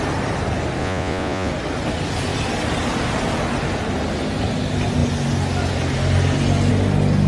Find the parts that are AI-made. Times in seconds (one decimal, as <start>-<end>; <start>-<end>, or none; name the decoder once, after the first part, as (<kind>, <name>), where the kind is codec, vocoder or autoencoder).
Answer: 0.8-1.5 (vocoder, Vocos)